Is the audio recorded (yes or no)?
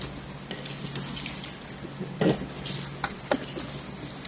yes